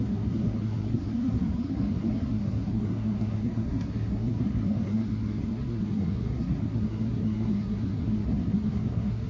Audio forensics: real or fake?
fake